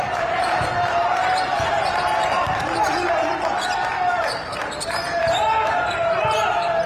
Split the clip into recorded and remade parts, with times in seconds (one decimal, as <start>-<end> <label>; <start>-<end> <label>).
0.0-6.9 remade